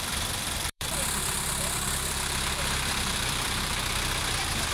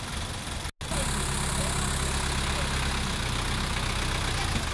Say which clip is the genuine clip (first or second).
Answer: second